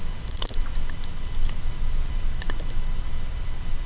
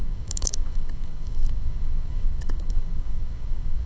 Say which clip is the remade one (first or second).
second